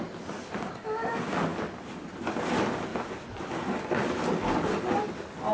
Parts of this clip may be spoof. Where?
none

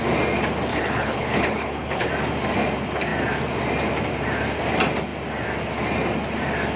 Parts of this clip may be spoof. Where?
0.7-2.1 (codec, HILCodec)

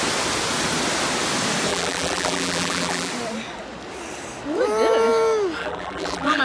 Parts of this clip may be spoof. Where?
1.7-3.1 (vocoder, BigVGAN v2); 5.6-6.4